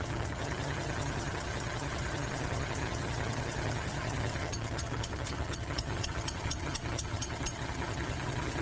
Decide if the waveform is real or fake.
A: fake